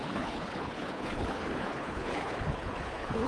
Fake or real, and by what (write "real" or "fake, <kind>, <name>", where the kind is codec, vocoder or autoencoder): fake, codec, HILCodec